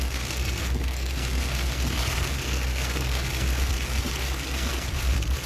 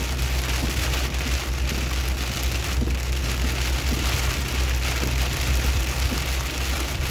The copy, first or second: first